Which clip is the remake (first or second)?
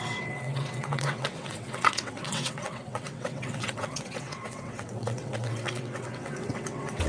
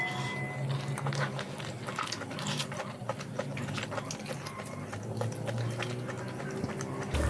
first